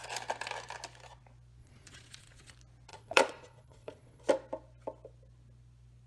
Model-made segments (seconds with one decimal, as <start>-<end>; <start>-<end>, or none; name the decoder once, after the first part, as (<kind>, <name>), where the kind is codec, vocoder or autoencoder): 1.6-2.5 (vocoder, Vocos); 2.9-4.2